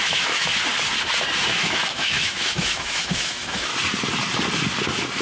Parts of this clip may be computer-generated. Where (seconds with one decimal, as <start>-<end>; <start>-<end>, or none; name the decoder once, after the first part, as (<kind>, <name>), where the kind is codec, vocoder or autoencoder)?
0.0-0.5 (autoencoder, DAC-VAE); 1.5-3.7

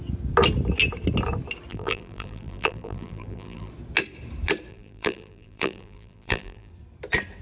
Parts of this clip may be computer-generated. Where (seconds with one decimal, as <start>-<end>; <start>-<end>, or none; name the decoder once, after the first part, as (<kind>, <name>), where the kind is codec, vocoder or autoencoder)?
1.7-3.7 (vocoder, BigVGAN v2); 4.7-6.7

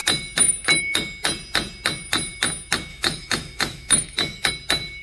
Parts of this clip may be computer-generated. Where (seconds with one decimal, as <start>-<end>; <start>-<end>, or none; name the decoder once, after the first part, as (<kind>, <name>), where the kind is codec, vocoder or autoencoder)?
2.9-4.5 (autoencoder, DAC-VAE)

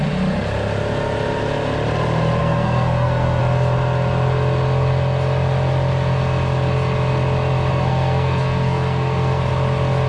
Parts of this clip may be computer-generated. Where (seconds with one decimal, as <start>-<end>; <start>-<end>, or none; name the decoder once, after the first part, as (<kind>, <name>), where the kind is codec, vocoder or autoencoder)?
2.4-3.4 (codec, SNAC); 7.7-9.5

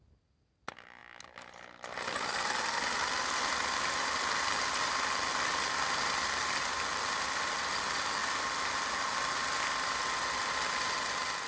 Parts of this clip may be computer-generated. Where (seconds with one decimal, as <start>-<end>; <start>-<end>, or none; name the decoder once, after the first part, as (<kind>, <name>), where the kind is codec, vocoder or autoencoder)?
none